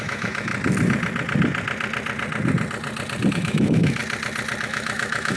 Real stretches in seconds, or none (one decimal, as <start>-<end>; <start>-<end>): 0.5-3.3; 4.0-4.6